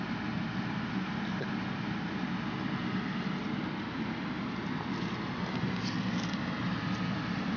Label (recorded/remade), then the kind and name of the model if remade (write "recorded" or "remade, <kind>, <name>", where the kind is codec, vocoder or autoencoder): recorded